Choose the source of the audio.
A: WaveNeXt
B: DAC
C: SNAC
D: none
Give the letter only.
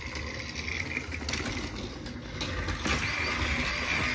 D